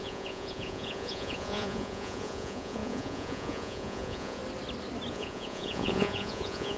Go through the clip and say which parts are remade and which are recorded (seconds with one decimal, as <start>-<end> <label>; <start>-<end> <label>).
0.0-4.4 remade; 4.4-5.1 recorded; 5.1-6.8 remade